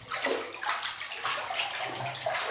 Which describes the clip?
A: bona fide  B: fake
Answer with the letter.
A